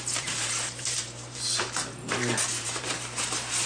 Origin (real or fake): fake